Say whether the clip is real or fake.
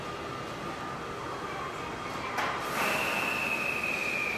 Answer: real